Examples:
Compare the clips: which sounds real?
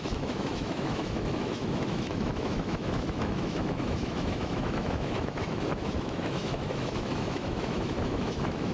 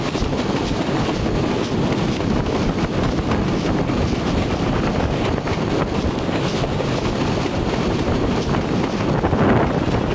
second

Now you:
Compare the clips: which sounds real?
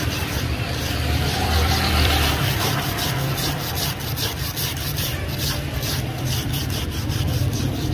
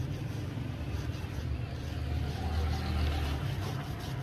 second